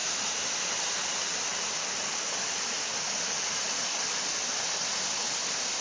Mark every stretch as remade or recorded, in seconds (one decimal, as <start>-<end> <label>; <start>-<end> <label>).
0.0-0.9 remade; 0.9-5.8 recorded